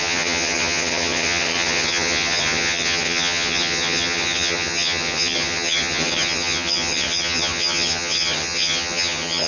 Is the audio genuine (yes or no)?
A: no